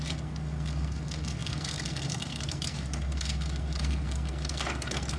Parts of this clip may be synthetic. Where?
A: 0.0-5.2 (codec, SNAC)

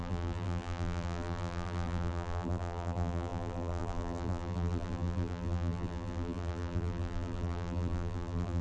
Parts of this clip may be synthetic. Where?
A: 0.0-8.6 (vocoder, BigVGAN v2)

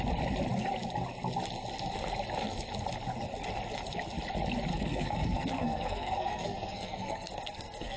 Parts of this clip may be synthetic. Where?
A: 4.7-8.0 (codec, SNAC)

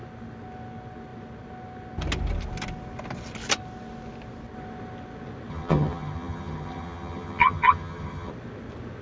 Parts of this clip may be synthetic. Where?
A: 5.5-8.3 (vocoder, HiFi-GAN)

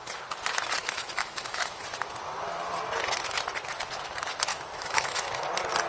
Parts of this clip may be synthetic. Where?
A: 0.8-1.8 (autoencoder, DAC-VAE); 4.5-5.4

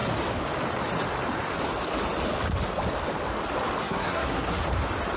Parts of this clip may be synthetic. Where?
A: 3.8-4.6 (codec, SNAC)

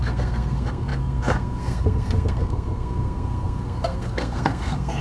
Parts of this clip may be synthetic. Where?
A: 0.0-5.0 (codec, SNAC)

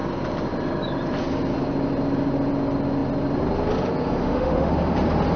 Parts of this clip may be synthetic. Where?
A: 4.2-4.7 (autoencoder, DAC-VAE)